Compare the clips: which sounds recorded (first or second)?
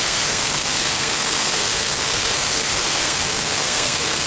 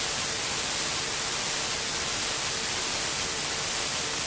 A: second